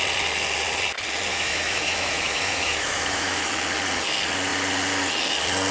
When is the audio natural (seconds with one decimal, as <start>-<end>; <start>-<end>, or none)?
0.0-1.3; 3.5-5.7

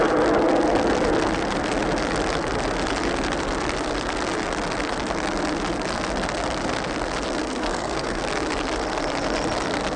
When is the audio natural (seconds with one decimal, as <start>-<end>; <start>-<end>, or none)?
0.0-7.4; 8.2-10.0

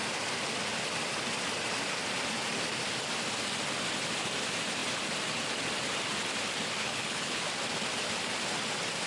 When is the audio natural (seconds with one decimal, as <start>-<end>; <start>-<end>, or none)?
0.0-6.8; 7.4-9.1

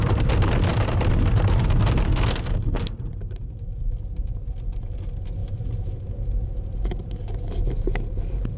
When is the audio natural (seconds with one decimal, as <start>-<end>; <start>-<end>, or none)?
0.0-0.7; 1.8-5.4; 6.1-8.6

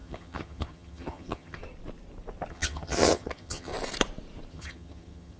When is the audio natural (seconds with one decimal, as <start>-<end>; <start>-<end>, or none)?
1.6-2.5; 3.7-4.5

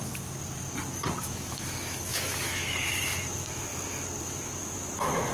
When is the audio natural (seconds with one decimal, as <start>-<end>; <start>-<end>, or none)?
0.4-1.2; 3.7-4.2

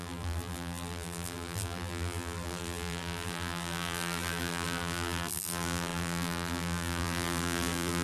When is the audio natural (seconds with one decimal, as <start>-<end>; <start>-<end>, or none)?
none

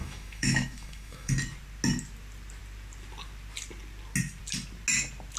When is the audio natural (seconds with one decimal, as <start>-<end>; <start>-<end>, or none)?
1.3-5.4